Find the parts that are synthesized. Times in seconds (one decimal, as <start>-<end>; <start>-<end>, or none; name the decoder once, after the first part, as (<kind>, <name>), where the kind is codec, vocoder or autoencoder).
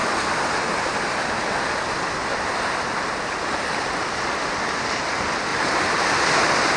5.5-6.1 (vocoder, BigVGAN v2)